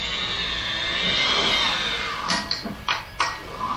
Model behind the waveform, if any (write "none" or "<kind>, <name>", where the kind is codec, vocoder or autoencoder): none